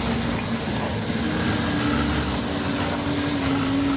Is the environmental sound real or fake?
real